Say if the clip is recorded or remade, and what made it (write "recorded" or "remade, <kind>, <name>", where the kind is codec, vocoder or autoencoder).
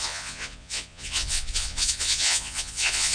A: remade, vocoder, Vocos